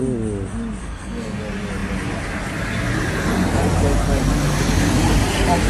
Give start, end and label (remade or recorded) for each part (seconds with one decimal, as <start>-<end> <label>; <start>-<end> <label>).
0.0-0.8 recorded; 0.8-1.4 remade; 1.4-5.7 recorded